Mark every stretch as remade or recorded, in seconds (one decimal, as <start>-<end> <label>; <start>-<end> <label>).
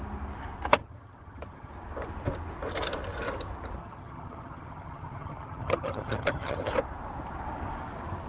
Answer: 0.0-0.8 recorded; 0.8-1.7 remade; 1.7-3.8 recorded; 3.8-6.7 remade; 6.7-8.3 recorded